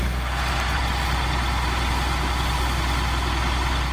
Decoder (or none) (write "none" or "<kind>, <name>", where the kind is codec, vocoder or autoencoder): none